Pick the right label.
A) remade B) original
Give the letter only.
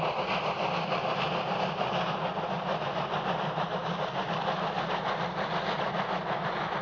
B